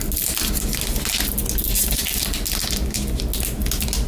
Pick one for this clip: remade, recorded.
recorded